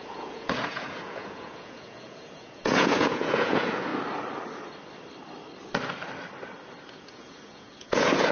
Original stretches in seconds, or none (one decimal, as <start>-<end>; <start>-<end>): 3.9-6.9